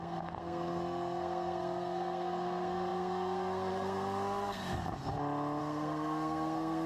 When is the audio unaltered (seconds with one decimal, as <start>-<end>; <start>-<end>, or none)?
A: 4.6-5.6